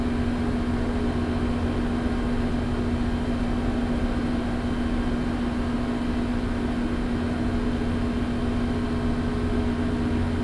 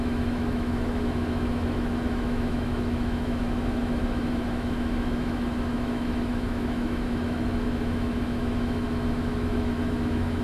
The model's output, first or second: second